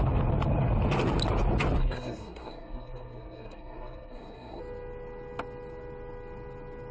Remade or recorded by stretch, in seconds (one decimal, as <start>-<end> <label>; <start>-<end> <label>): 0.0-1.8 recorded; 1.8-4.6 remade; 4.6-6.9 recorded

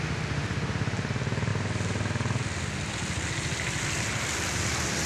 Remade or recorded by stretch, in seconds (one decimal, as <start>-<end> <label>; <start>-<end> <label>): 0.0-5.1 recorded

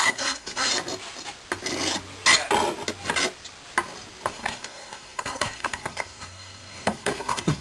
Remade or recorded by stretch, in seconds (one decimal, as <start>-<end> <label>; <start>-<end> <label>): 0.0-0.7 remade; 0.7-4.3 recorded; 4.3-7.6 remade

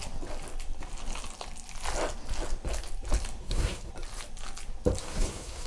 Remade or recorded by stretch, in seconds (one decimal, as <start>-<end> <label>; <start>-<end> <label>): 0.0-3.4 recorded; 3.4-3.9 remade; 3.9-5.0 recorded; 5.0-5.7 remade

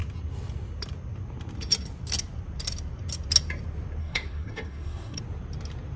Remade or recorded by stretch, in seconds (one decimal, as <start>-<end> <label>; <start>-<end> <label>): 0.0-4.0 recorded; 4.0-5.2 remade; 5.2-6.0 recorded

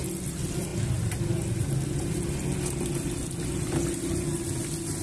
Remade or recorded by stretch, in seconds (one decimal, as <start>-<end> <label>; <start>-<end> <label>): 0.0-5.0 recorded

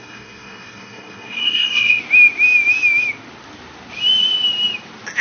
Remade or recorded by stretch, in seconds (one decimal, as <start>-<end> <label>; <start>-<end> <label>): 0.0-2.0 remade; 2.0-5.2 recorded

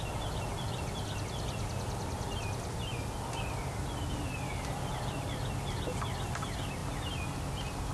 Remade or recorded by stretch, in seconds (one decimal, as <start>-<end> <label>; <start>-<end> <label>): 0.0-7.9 recorded